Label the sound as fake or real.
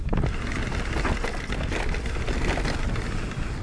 real